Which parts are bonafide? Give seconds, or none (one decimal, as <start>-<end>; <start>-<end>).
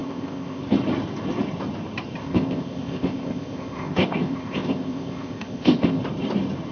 0.6-2.2; 6.0-6.7